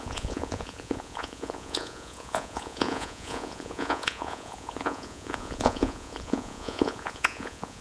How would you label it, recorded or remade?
remade